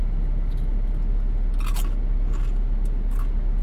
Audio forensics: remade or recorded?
recorded